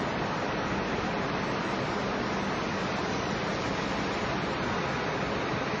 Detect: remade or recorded recorded